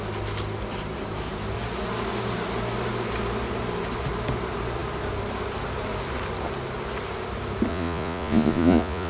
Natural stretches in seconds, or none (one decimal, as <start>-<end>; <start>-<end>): 0.0-7.7